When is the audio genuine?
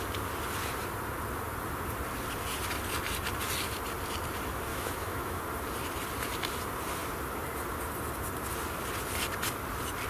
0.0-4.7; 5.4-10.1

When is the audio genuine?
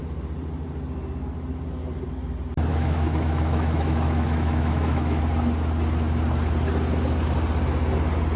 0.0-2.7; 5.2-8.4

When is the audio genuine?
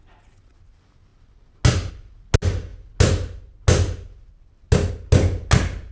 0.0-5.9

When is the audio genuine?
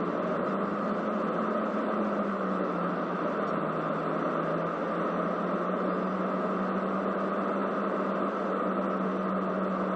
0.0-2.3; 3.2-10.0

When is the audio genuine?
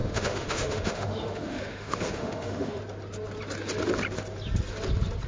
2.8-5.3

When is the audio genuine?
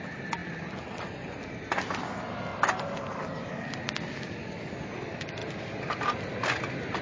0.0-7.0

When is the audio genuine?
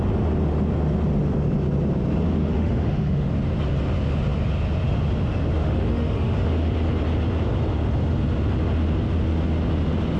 0.0-2.4; 3.3-5.6; 6.5-10.2